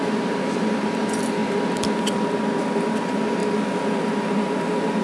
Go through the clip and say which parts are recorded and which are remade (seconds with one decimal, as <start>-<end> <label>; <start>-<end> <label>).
0.0-1.4 remade; 1.4-3.0 recorded; 3.0-3.4 remade; 3.4-4.0 recorded; 4.0-5.0 remade